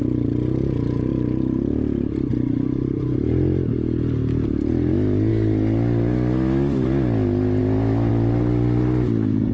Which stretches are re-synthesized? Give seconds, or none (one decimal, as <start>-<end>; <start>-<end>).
7.6-8.1